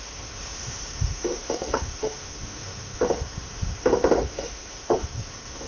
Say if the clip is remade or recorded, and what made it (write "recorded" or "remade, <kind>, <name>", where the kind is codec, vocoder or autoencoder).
remade, autoencoder, DAC-VAE